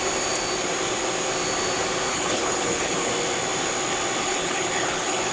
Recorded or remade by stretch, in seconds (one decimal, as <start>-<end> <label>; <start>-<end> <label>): 0.0-2.1 recorded; 2.1-3.1 remade; 3.1-4.2 recorded; 4.2-5.3 remade